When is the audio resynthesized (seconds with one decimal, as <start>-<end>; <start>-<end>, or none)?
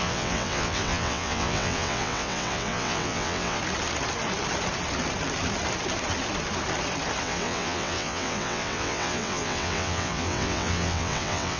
0.0-3.6; 7.2-11.6